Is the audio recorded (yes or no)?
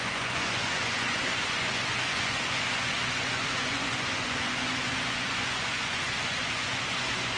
no